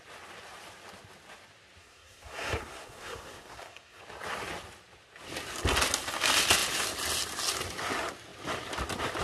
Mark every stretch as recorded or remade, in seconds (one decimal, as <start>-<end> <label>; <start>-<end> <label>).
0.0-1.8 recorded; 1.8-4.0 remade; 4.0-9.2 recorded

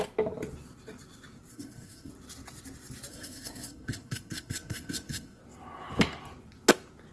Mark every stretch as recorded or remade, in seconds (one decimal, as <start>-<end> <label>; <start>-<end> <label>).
0.0-1.5 recorded; 1.5-2.1 remade; 2.1-3.1 recorded; 3.1-5.4 remade; 5.4-7.1 recorded

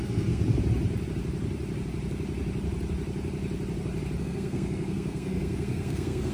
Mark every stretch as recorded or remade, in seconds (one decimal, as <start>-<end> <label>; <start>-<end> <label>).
0.0-0.4 remade; 0.4-4.2 recorded; 4.2-6.3 remade